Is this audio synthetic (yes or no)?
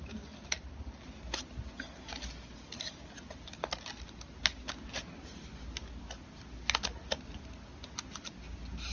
no